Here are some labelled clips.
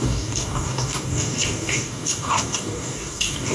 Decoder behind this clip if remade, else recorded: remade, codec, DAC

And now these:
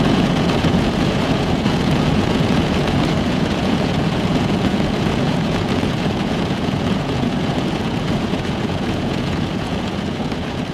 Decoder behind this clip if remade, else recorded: remade, vocoder, Vocos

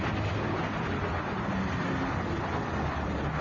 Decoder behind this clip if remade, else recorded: recorded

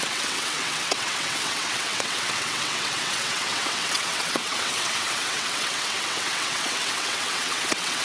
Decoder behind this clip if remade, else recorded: remade, vocoder, WaveNeXt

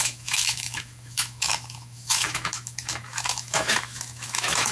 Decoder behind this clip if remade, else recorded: remade, autoencoder, DAC-VAE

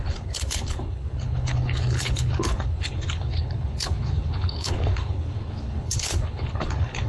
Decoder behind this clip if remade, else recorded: remade, codec, HILCodec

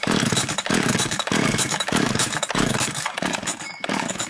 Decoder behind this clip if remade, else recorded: remade, codec, DAC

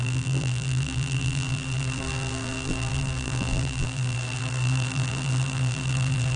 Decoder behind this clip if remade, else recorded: remade, vocoder, BigVGAN v2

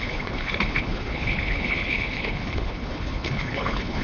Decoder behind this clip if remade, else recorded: remade, codec, HILCodec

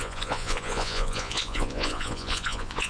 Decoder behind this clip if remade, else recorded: remade, vocoder, Vocos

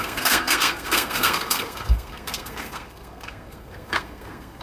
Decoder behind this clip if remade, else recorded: remade, codec, SNAC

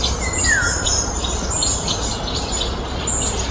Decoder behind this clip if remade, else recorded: recorded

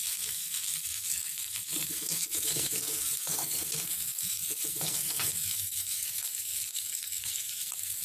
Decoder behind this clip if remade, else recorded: remade, codec, SNAC